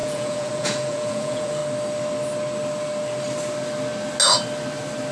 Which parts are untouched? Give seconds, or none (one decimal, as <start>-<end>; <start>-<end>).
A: 1.6-5.1

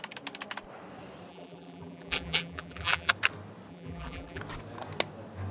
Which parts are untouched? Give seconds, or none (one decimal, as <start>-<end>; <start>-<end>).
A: 0.0-1.3; 3.1-3.7; 4.4-5.5